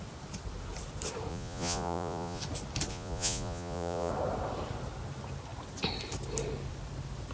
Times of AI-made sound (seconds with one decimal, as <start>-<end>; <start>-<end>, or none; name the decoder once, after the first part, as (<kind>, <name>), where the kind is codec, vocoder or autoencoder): 1.3-2.4 (vocoder, Vocos); 2.9-4.1